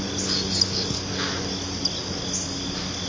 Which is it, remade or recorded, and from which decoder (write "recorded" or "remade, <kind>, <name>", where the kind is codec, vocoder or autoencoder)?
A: recorded